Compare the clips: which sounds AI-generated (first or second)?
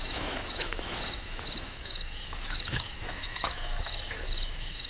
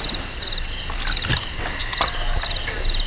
first